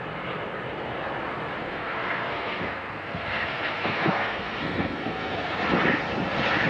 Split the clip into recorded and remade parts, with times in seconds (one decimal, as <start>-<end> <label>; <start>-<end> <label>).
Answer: 0.0-1.6 recorded; 1.6-5.6 remade; 5.6-6.7 recorded